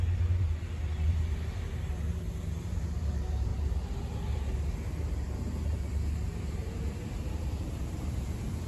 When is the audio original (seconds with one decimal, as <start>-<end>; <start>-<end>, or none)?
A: none